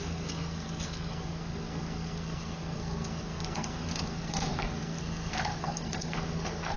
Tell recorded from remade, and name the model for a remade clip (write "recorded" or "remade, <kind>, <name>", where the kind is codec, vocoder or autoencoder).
remade, codec, SNAC